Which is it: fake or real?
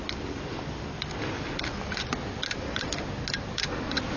real